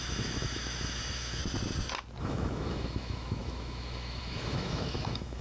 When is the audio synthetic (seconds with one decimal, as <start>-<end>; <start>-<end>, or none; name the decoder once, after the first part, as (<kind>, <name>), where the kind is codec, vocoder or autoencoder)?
0.0-1.4 (autoencoder, DAC-VAE); 2.2-5.4